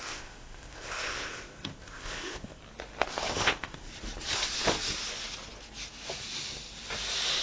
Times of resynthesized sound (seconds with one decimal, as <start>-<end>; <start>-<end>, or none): 0.0-2.6; 3.3-3.9